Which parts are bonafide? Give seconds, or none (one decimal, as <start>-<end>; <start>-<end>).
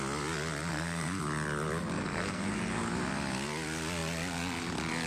0.0-0.7; 1.2-2.0; 2.6-5.1